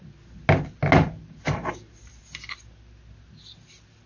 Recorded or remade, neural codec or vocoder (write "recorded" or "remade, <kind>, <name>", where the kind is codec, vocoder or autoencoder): recorded